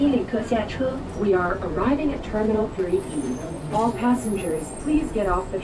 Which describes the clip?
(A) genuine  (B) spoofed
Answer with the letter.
B